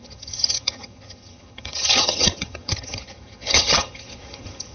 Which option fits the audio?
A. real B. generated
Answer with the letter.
B